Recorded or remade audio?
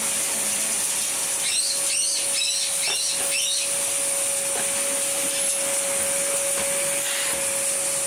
recorded